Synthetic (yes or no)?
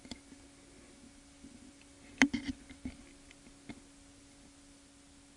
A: no